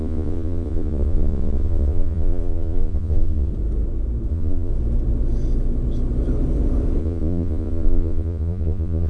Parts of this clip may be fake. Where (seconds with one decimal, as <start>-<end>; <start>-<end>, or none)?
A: 0.0-3.5; 4.3-4.7; 7.0-9.1